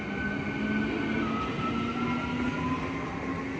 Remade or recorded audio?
recorded